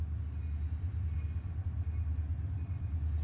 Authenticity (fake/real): real